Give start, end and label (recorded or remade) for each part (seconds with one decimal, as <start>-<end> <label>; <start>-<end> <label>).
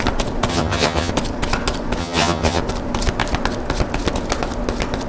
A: 0.0-0.5 recorded; 0.5-1.1 remade; 1.1-2.0 recorded; 2.0-2.6 remade; 2.6-5.1 recorded